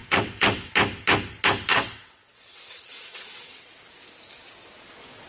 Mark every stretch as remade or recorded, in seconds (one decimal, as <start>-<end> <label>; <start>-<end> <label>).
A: 0.0-0.7 remade; 0.7-1.7 recorded; 1.7-3.8 remade; 3.8-5.3 recorded